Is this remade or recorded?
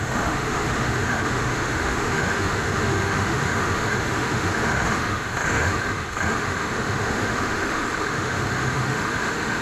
remade